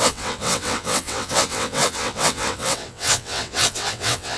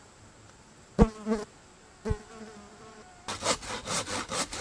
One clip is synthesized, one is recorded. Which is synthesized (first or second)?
first